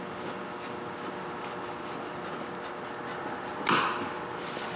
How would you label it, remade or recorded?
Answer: recorded